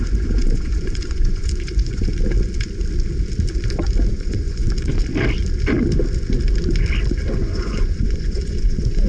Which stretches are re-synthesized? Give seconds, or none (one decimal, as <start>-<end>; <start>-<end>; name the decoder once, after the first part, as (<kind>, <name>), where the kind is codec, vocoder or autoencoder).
0.0-2.1 (vocoder, Vocos); 4.1-5.0; 7.1-9.1